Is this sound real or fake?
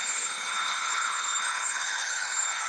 fake